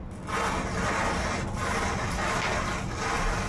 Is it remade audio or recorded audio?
recorded